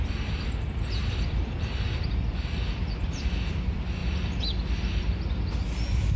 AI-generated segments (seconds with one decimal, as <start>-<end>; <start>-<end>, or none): 1.0-1.9